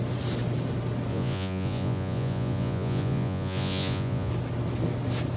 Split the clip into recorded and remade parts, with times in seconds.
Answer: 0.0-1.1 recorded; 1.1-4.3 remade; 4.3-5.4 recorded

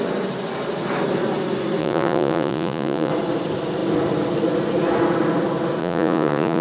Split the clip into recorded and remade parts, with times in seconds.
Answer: 0.0-1.8 recorded; 1.8-3.1 remade; 3.1-5.8 recorded; 5.8-6.6 remade